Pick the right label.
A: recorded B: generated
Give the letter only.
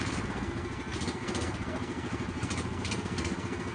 B